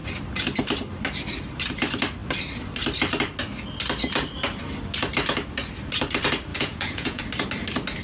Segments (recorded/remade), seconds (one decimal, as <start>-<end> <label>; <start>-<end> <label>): 0.0-6.5 recorded; 6.5-7.2 remade; 7.2-8.0 recorded